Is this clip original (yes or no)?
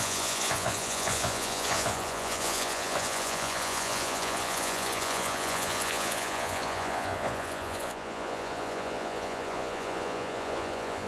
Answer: no